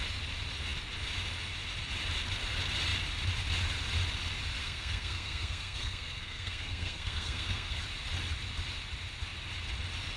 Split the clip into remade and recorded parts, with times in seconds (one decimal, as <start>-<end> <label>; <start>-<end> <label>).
0.0-4.6 recorded; 4.6-7.8 remade; 7.8-10.2 recorded